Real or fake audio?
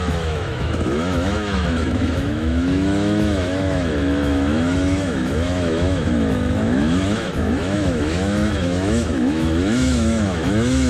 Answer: fake